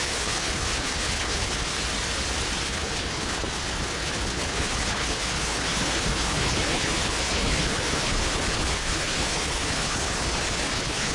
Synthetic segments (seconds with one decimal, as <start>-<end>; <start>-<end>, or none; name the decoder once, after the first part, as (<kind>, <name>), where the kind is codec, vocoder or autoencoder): 0.0-1.7 (codec, HILCodec); 2.6-11.1

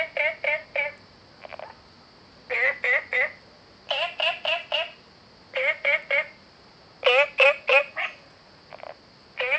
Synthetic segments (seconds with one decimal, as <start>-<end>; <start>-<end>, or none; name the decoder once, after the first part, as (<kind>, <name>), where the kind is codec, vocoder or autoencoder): 7.7-8.7 (vocoder, Vocos)

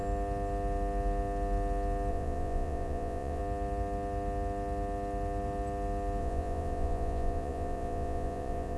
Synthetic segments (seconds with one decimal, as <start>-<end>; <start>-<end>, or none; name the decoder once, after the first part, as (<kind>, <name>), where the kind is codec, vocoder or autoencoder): 2.1-3.4 (vocoder, Vocos); 6.2-8.8